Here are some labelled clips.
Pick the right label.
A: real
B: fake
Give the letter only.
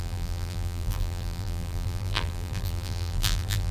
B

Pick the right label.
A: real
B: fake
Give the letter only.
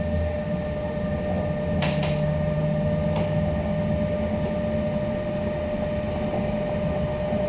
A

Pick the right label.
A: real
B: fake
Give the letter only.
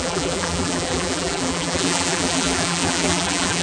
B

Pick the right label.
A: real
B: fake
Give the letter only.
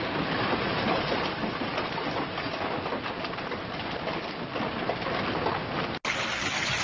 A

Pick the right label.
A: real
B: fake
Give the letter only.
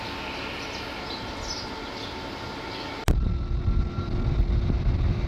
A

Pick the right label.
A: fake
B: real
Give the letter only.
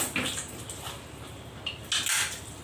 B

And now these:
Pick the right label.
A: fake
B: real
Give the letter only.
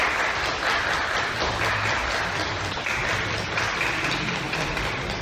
A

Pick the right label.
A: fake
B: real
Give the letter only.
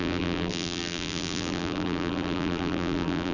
A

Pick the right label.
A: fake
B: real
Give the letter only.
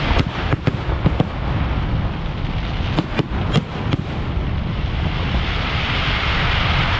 A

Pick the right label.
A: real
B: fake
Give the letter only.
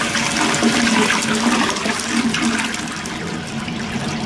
A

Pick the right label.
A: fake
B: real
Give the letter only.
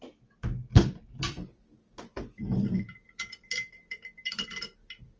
A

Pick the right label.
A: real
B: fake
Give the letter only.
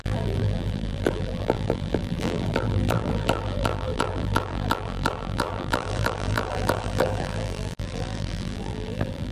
B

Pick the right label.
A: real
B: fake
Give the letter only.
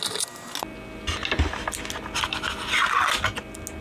A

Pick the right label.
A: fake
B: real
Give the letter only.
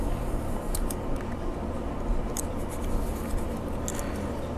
B